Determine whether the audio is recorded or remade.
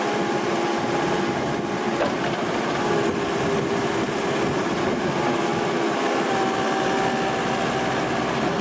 recorded